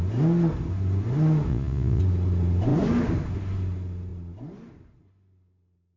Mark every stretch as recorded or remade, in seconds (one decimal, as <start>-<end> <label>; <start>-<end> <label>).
0.0-1.5 recorded; 1.5-2.0 remade; 2.0-6.0 recorded